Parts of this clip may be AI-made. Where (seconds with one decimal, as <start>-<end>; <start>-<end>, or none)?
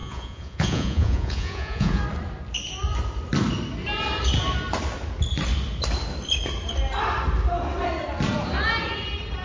0.0-2.0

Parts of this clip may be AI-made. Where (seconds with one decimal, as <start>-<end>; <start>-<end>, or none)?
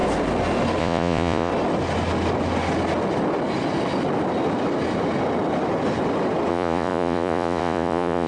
0.8-1.5; 6.5-8.3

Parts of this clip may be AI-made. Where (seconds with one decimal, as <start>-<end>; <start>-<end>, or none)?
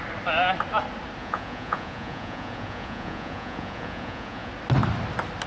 1.2-4.5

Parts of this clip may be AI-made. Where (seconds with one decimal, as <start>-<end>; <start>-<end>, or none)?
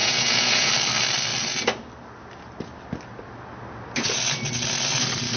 0.0-0.7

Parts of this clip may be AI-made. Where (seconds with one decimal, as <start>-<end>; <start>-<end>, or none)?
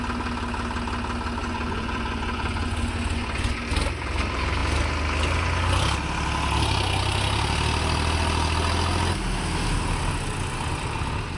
1.4-3.6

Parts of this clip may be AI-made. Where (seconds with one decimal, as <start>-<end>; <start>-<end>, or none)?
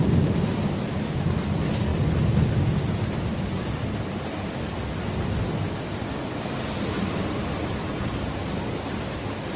none